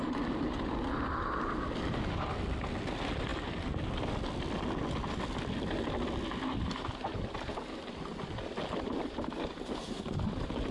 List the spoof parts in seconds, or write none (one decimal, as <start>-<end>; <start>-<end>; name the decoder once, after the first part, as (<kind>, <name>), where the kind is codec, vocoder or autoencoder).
none